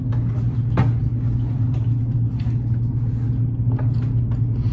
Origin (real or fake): real